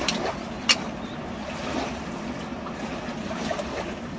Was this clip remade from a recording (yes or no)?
no